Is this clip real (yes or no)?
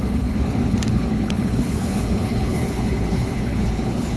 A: no